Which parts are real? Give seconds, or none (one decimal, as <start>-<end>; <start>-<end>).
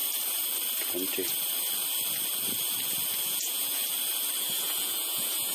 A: 0.0-3.2; 3.8-4.4